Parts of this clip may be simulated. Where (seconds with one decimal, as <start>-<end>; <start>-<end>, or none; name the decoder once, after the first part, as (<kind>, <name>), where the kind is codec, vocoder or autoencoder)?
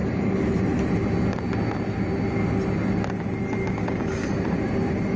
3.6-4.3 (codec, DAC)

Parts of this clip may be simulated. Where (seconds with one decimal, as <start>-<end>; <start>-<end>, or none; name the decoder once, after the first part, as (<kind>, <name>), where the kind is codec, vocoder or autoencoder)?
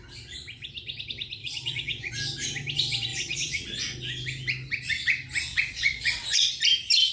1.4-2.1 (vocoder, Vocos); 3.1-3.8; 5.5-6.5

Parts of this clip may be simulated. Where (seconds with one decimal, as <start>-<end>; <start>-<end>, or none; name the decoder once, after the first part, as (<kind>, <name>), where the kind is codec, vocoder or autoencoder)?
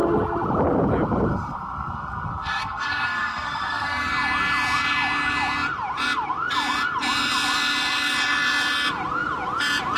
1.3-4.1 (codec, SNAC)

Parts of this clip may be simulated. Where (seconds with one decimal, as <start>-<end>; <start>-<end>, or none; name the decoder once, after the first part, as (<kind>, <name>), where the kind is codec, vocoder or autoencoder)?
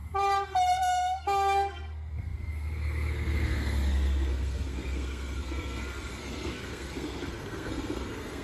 0.8-8.4 (codec, SNAC)